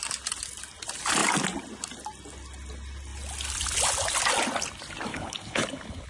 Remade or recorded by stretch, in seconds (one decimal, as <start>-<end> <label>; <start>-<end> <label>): 0.0-5.1 recorded; 5.1-6.1 remade